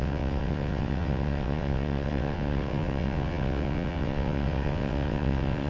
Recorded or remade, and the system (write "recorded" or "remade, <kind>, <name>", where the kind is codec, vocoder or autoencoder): remade, vocoder, WaveNeXt